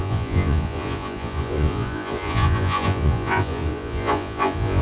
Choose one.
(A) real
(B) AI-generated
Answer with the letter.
B